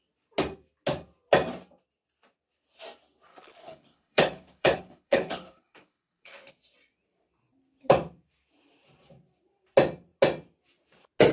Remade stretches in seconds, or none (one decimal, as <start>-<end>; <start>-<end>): 3.3-6.5